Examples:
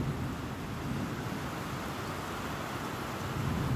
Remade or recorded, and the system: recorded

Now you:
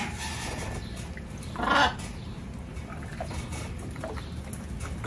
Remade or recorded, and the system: recorded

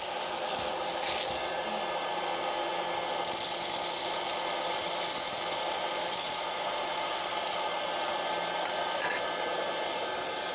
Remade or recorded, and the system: recorded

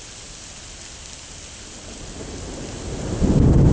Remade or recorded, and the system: recorded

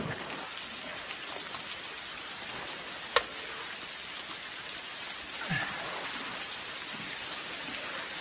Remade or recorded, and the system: recorded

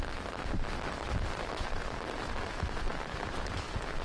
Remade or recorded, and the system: recorded